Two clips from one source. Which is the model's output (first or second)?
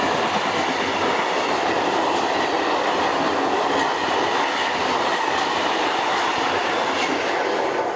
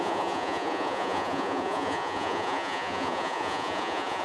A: second